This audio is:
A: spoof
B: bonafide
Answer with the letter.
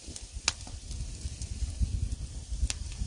B